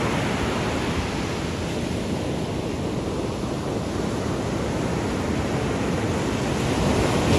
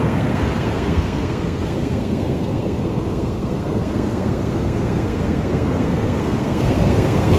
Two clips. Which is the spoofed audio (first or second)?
second